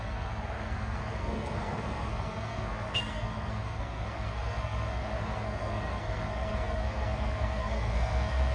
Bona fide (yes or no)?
no